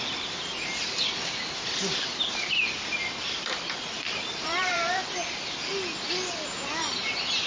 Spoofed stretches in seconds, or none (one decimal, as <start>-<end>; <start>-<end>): 3.2-5.1